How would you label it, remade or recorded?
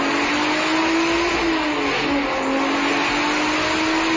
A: recorded